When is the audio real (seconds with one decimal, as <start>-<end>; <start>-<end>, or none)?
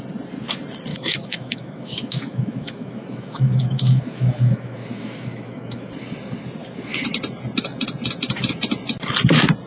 0.0-0.9; 5.9-9.7